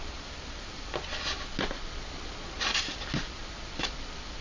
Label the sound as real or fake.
real